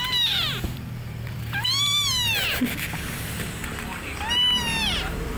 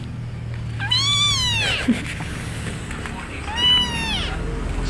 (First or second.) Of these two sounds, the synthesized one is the first